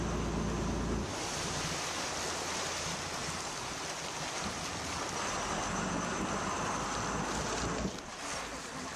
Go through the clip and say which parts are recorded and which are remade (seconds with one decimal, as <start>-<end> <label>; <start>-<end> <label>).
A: 0.0-9.0 recorded